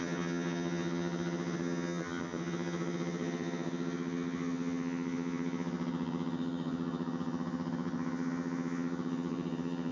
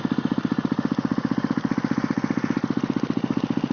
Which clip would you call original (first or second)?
second